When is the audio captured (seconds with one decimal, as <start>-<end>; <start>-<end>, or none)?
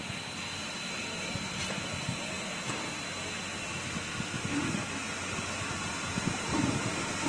0.0-7.3